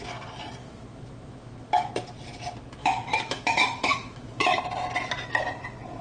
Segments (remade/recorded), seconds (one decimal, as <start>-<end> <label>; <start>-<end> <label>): 0.0-0.6 recorded; 0.6-1.9 remade; 1.9-2.8 recorded; 2.8-4.6 remade; 4.6-6.0 recorded